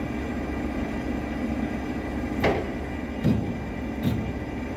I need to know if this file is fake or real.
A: real